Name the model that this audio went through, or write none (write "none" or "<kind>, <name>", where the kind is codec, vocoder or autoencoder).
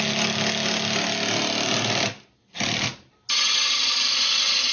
none